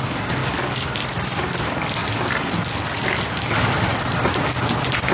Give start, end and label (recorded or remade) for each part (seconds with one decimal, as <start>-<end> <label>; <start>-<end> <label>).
0.0-5.1 recorded